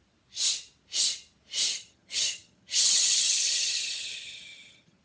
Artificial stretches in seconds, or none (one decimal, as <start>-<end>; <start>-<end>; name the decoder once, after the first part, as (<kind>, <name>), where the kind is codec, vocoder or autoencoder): 1.7-5.0 (vocoder, HiFi-GAN)